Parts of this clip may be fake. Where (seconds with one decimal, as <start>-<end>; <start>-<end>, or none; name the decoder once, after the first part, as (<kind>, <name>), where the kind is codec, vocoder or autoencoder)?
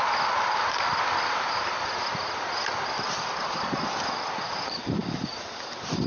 none